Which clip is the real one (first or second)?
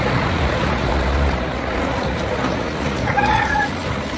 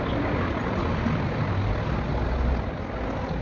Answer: second